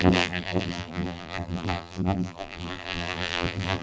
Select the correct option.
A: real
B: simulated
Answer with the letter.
B